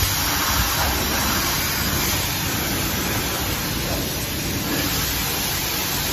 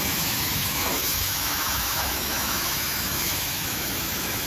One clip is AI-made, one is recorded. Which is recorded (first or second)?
first